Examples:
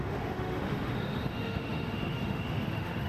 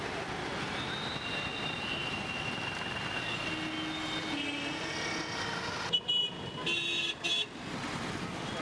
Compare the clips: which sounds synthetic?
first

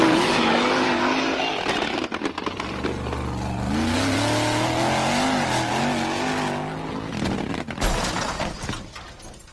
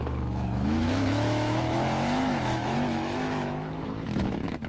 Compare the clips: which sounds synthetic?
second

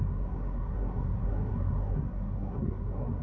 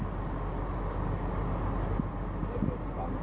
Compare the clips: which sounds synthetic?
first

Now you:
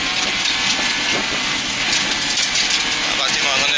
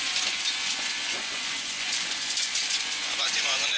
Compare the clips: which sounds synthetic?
second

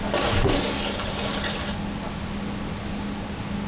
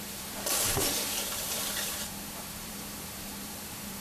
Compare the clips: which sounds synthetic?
second